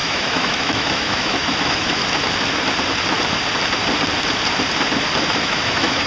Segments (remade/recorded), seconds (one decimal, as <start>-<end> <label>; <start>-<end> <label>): 0.0-2.0 remade; 2.0-5.3 recorded; 5.3-6.1 remade